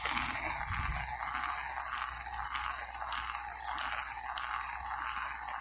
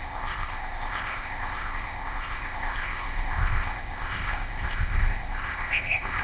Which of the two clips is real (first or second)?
first